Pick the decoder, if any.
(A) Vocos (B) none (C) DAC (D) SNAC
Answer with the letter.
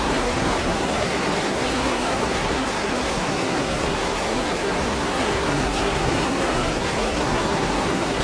D